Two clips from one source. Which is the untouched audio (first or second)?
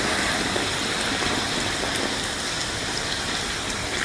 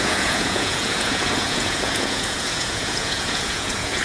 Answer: first